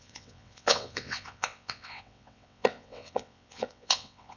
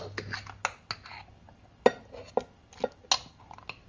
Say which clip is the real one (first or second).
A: second